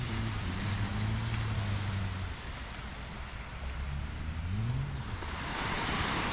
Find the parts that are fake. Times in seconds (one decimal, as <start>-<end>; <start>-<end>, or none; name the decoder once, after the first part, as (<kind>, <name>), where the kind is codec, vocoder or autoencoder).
0.0-0.9 (vocoder, BigVGAN v2); 4.7-6.3